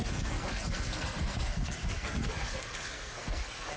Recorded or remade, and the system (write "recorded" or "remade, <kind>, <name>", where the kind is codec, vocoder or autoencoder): remade, codec, SNAC